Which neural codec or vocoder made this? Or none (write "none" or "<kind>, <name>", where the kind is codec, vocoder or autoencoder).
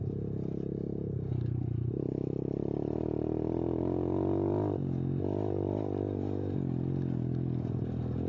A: none